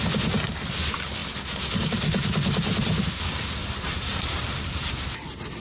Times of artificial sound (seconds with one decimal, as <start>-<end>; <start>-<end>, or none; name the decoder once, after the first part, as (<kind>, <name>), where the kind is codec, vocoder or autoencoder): 3.6-4.9 (vocoder, BigVGAN v2)